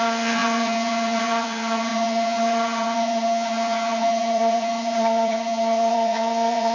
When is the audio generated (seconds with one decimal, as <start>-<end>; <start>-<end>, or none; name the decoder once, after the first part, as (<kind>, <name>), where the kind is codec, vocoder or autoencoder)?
0.0-6.7 (vocoder, HiFi-GAN)